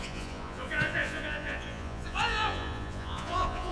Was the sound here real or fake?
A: fake